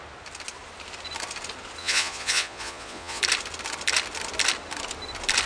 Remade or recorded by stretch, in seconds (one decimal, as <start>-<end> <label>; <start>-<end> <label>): 0.0-1.8 recorded; 1.8-3.2 remade; 3.2-5.5 recorded